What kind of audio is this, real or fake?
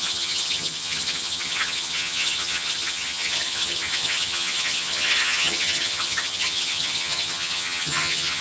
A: fake